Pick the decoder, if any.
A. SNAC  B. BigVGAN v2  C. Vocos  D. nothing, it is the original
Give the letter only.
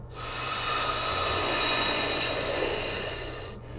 C